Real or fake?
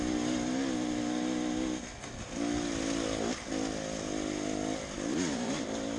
real